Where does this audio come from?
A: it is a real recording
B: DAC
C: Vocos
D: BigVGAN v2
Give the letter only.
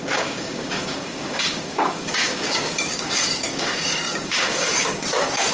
B